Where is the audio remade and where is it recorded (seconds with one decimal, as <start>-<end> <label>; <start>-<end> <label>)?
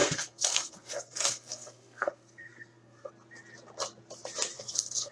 0.0-3.1 remade; 3.1-4.5 recorded; 4.5-5.1 remade